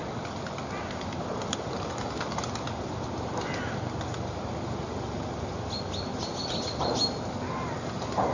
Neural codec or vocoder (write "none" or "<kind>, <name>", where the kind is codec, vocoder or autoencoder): none